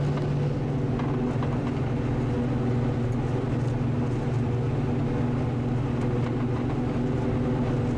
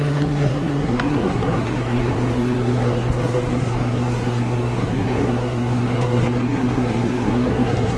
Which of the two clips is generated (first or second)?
second